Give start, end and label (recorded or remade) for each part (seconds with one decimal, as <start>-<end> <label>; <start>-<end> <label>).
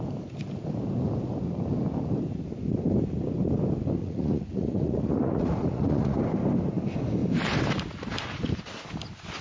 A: 0.0-4.0 recorded; 4.0-6.2 remade; 6.2-9.4 recorded